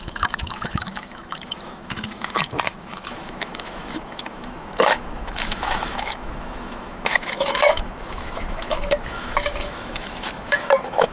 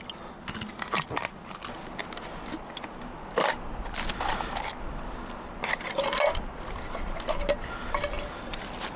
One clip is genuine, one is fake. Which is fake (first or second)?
first